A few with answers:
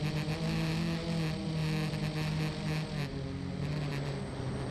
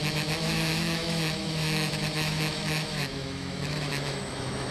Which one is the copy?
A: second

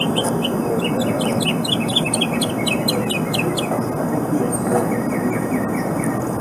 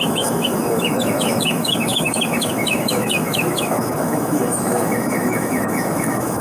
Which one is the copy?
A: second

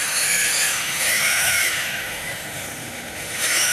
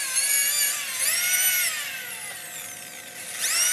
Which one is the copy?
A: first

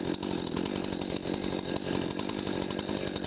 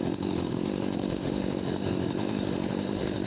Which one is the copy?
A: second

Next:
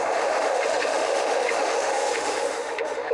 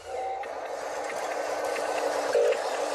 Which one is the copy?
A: first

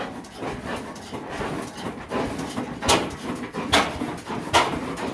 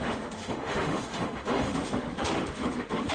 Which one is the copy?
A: second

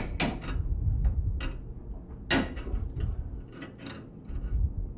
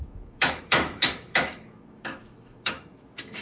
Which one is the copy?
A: second